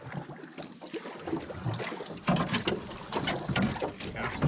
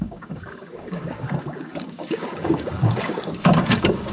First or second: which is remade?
second